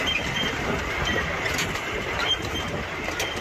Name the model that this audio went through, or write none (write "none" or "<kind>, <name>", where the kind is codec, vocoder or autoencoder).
vocoder, BigVGAN v2